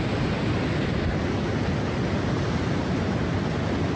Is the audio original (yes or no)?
yes